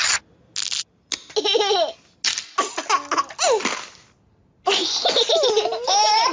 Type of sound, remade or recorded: recorded